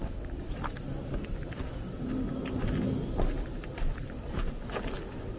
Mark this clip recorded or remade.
recorded